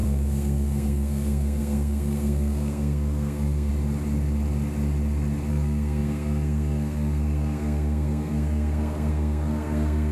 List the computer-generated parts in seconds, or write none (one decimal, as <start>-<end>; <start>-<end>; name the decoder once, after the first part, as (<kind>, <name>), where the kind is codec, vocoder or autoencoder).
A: 0.0-3.7 (codec, SNAC); 5.5-10.1